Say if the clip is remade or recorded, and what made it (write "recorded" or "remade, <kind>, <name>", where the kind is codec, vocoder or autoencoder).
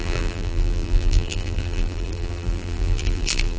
remade, vocoder, BigVGAN v2